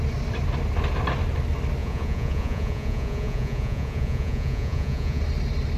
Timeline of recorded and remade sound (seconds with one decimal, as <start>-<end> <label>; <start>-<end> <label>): 0.0-1.8 recorded; 1.8-5.2 remade; 5.2-5.8 recorded